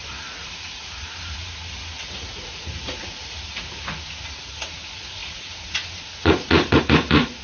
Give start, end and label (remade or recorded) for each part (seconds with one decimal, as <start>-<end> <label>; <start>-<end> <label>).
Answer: 0.0-7.4 remade